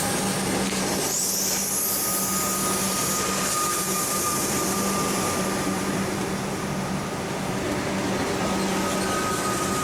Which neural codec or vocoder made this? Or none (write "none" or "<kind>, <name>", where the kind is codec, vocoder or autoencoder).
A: none